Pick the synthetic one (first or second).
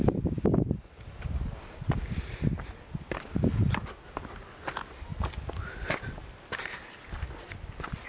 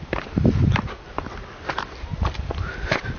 second